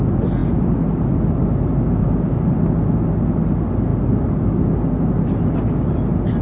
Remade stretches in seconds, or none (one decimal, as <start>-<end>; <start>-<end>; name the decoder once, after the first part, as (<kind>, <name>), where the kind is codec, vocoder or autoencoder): 2.0-2.5 (codec, DAC)